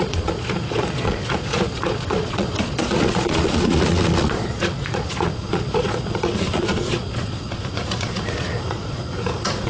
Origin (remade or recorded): remade